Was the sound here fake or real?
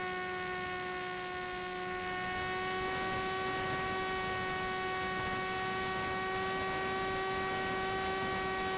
real